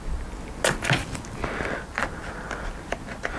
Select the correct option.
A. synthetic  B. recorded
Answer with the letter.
B